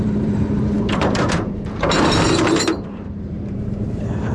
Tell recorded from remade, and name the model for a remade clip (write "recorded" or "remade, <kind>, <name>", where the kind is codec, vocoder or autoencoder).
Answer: remade, vocoder, BigVGAN v2